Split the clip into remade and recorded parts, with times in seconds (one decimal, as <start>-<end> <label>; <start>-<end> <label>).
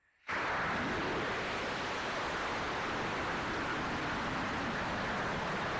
0.0-5.8 recorded